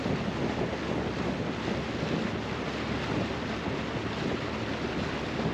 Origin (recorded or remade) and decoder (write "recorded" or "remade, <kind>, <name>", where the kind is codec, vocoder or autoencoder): recorded